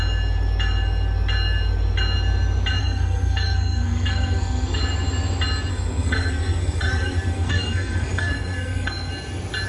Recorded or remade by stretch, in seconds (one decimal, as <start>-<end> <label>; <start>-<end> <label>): 0.0-2.8 recorded; 2.8-4.8 remade; 4.8-5.7 recorded; 5.7-9.1 remade; 9.1-9.7 recorded